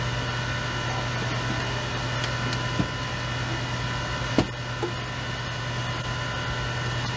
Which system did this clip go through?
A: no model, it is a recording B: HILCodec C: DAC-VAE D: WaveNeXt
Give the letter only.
A